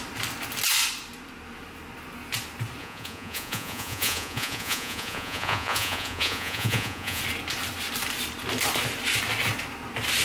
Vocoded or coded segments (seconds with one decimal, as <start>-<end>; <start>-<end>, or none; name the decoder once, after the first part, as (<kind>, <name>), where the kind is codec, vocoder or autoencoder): 2.8-7.2 (vocoder, Vocos)